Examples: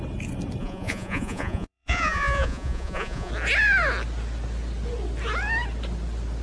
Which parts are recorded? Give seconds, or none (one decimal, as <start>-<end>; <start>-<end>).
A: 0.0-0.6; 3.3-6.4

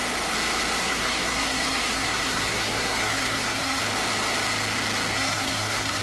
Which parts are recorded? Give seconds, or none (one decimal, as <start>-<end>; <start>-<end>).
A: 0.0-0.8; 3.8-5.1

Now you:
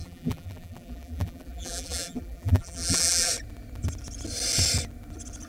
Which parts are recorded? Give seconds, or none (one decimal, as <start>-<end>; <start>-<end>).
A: 3.3-5.5

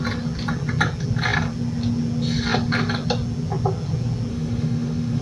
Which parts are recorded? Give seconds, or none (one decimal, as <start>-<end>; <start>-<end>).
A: 0.0-4.3